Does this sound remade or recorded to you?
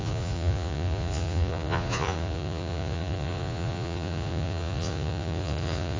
remade